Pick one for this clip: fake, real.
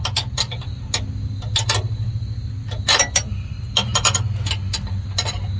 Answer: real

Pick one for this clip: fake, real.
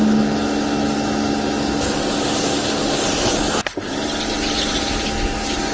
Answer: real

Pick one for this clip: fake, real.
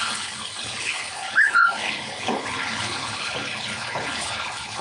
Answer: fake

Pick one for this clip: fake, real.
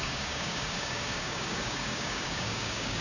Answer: fake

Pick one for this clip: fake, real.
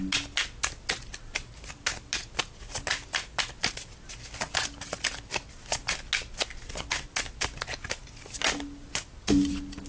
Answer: real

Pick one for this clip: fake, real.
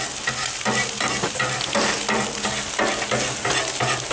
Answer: real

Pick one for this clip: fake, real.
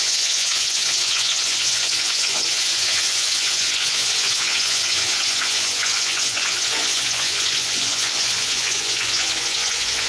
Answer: fake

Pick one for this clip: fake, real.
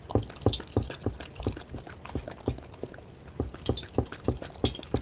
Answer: real